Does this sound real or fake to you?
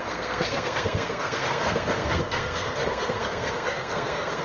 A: fake